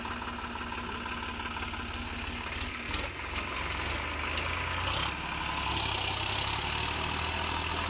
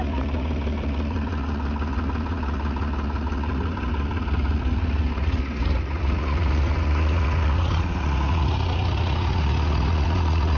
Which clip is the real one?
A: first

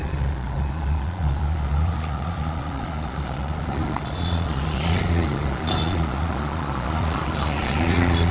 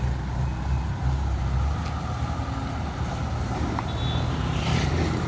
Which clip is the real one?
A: second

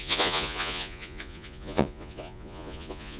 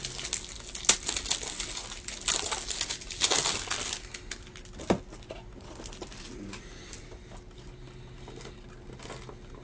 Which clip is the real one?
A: second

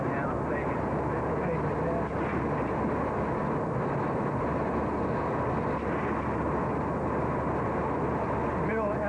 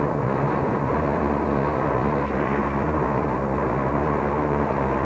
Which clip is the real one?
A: first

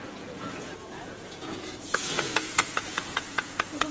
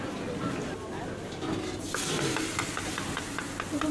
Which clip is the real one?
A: second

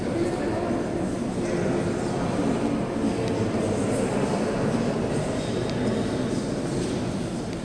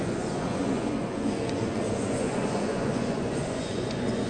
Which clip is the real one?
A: first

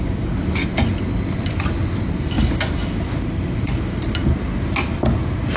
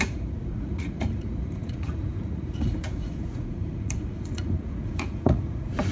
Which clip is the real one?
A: first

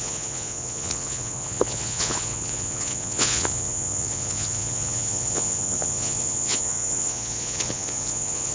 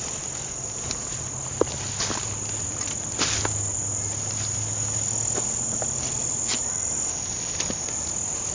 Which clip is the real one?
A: second